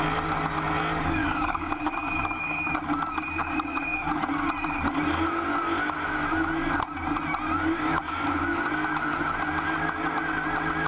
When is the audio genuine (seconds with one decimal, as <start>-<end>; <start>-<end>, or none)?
0.0-1.2; 2.7-3.4; 4.1-10.9